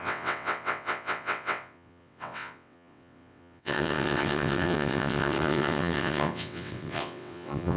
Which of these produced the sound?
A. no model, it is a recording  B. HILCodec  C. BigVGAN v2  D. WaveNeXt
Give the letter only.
D